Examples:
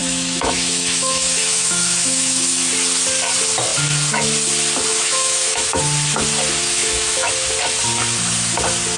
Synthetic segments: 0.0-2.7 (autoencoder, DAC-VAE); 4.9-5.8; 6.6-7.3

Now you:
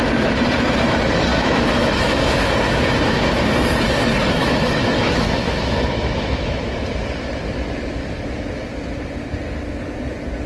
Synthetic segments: 1.3-3.4 (autoencoder, DAC-VAE); 4.4-6.6

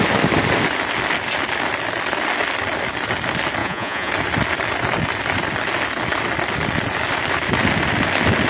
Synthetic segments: 3.6-4.1 (vocoder, Vocos)

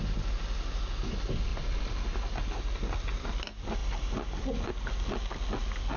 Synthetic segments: none

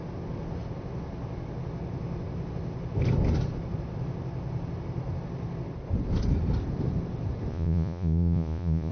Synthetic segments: 7.5-8.9 (vocoder, Vocos)

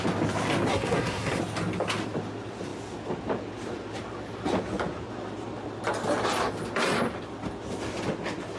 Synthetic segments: 0.7-1.4 (codec, SNAC)

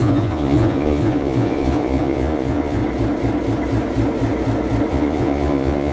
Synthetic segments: 0.0-2.8 (vocoder, Vocos); 4.9-5.9